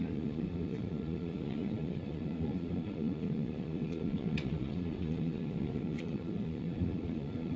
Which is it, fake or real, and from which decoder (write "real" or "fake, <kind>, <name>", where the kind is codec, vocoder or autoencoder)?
fake, vocoder, Vocos